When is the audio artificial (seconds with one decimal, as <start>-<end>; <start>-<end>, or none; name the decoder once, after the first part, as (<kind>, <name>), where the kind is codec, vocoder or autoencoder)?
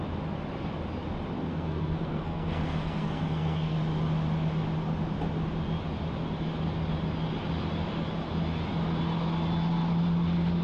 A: 1.5-3.8 (codec, SNAC)